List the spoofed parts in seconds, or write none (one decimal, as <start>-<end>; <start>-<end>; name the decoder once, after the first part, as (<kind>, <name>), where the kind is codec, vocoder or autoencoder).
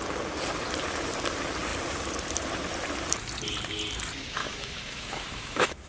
4.4-5.9 (autoencoder, DAC-VAE)